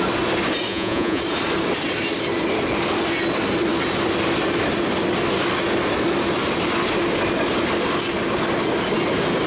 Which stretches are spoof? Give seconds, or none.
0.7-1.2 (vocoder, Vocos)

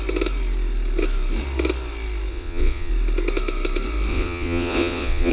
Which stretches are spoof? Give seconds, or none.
2.3-2.9 (vocoder, WaveNeXt); 4.1-5.3

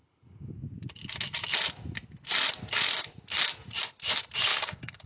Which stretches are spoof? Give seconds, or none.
4.5-5.1 (codec, DAC)

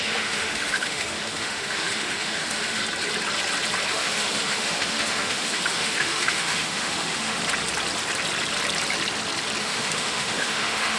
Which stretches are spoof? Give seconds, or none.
0.0-2.8 (autoencoder, DAC-VAE); 3.9-7.4; 9.6-11.0

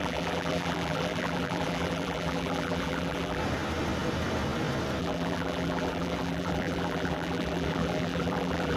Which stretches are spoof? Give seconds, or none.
0.0-3.4 (vocoder, BigVGAN v2); 5.0-8.8